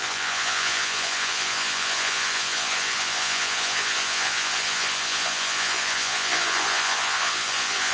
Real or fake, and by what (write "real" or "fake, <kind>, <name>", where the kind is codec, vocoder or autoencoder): fake, vocoder, Vocos